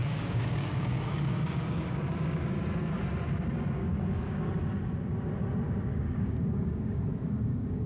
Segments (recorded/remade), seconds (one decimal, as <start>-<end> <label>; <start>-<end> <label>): 0.0-3.0 remade; 3.0-3.8 recorded; 3.8-4.5 remade; 4.5-5.9 recorded; 5.9-7.9 remade